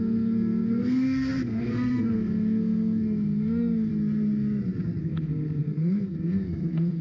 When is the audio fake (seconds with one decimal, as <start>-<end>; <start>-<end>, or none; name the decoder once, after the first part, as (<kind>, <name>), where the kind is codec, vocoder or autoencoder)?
0.0-3.9 (codec, SNAC); 5.0-7.0